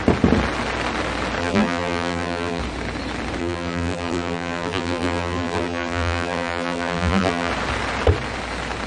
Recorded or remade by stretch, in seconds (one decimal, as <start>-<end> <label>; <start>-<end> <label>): 0.0-1.4 recorded; 1.4-2.6 remade; 2.6-3.4 recorded; 3.4-7.5 remade; 7.5-8.9 recorded